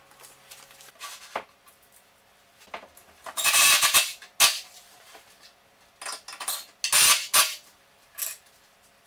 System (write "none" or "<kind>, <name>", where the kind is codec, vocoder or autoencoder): none